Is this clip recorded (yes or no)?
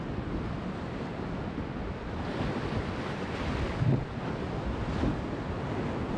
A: yes